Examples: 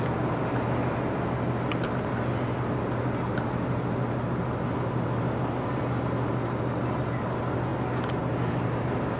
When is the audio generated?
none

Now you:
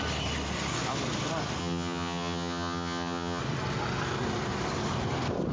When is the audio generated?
1.6-3.4

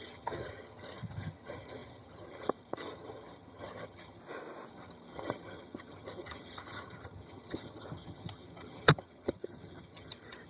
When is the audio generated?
0.0-4.2; 4.7-10.5

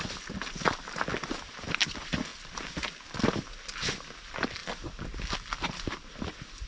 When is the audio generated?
none